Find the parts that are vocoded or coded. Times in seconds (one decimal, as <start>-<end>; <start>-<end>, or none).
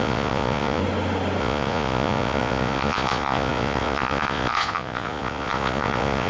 0.0-0.8; 1.4-6.3